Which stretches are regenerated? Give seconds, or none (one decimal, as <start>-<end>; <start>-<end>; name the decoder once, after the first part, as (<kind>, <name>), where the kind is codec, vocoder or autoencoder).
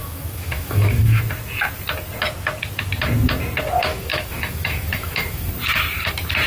0.0-1.2 (autoencoder, DAC-VAE); 3.9-5.5